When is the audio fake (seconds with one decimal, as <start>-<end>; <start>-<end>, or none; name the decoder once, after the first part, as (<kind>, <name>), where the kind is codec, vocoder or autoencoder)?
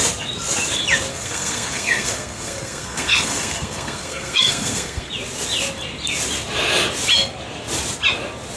1.1-5.1 (codec, SNAC)